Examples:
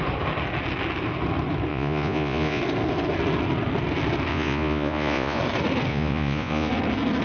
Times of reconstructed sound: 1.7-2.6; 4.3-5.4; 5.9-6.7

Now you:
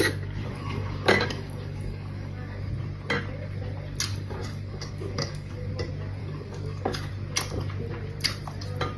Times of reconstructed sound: 0.4-2.7; 4.1-5.7; 6.2-7.1

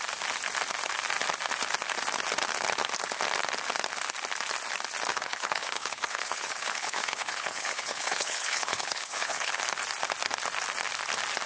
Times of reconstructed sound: 5.1-9.6

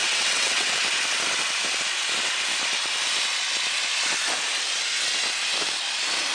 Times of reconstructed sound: 0.0-0.7

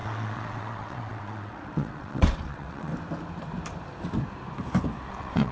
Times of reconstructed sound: 0.0-2.9; 5.1-5.5

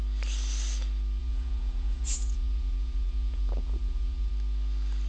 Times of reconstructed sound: 1.2-4.3

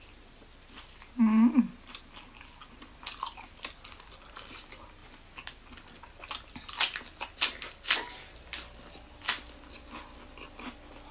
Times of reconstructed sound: none